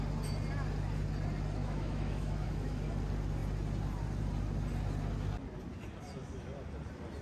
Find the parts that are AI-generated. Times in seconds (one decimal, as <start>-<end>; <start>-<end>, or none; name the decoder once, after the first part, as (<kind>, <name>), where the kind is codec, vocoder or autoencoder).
1.6-2.8 (autoencoder, DAC-VAE)